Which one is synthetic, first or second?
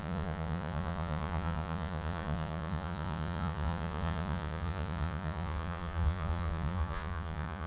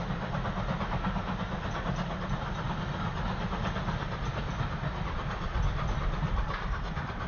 first